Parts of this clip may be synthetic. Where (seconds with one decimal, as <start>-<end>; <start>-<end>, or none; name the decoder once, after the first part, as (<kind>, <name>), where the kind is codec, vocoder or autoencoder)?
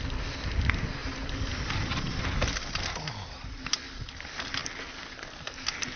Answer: none